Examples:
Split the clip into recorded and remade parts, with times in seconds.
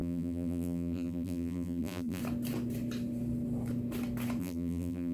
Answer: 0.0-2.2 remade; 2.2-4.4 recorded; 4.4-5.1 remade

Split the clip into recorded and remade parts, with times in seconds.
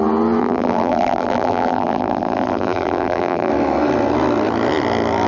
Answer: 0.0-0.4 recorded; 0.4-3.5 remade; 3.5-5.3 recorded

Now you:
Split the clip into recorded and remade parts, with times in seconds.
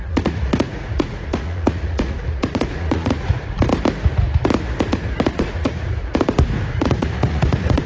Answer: 0.0-3.7 remade; 3.7-5.3 recorded; 5.3-6.0 remade; 6.0-6.7 recorded; 6.7-7.9 remade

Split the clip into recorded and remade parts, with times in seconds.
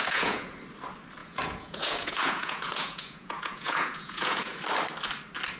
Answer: 0.0-0.6 remade; 0.6-1.2 recorded; 1.2-4.6 remade; 4.6-5.6 recorded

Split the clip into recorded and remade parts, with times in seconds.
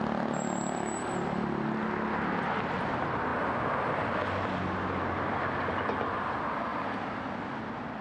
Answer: 0.0-8.0 recorded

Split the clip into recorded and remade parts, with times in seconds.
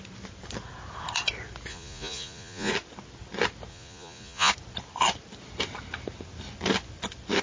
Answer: 0.0-1.7 recorded; 1.7-2.7 remade; 2.7-3.7 recorded; 3.7-4.5 remade; 4.5-7.4 recorded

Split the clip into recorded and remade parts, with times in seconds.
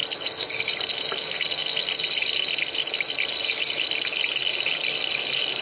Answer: 0.0-5.6 recorded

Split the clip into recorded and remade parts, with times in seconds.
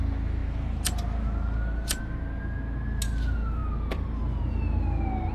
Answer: 0.0-5.3 recorded